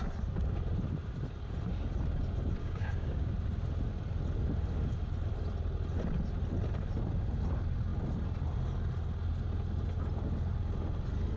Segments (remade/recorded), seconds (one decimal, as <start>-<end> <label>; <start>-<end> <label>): 0.0-2.6 recorded; 2.6-3.3 remade; 3.3-11.4 recorded